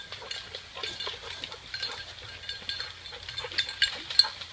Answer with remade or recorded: recorded